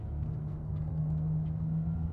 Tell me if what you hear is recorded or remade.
remade